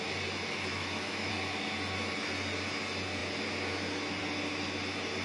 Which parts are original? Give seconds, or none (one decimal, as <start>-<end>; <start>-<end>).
0.0-0.7; 1.3-5.2

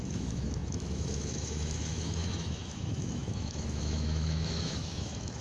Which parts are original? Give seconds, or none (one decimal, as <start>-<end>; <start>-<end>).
none

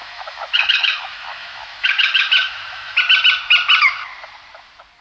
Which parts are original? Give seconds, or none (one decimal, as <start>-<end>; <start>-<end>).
3.0-5.0

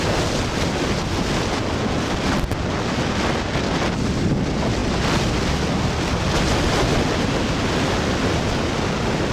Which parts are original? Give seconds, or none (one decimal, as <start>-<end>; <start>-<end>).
0.0-9.3

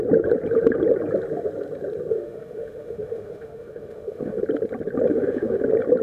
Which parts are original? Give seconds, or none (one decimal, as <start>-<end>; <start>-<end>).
0.0-2.1; 4.4-5.1; 5.6-6.0

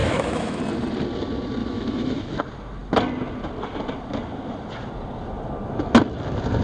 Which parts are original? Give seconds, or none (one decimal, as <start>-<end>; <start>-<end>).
0.6-1.6; 2.4-6.6